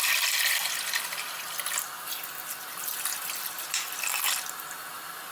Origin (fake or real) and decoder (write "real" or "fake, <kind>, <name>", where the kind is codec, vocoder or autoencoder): real